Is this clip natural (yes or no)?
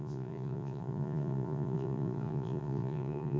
no